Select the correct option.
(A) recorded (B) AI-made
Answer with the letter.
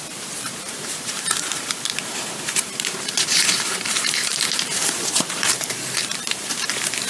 B